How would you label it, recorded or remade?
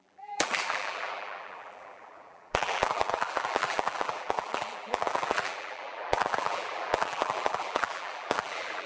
remade